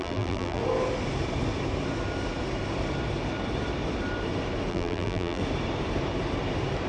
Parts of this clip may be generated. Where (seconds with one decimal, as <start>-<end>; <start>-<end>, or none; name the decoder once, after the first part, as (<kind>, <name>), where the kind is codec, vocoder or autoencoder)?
0.0-0.6 (vocoder, BigVGAN v2); 4.7-5.4